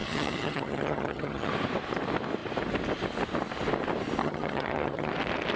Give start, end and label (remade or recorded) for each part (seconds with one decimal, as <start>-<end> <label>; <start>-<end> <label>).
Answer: 0.0-1.5 remade; 1.5-4.2 recorded; 4.2-5.1 remade; 5.1-5.6 recorded